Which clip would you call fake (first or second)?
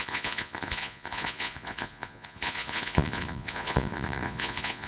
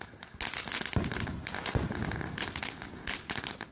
first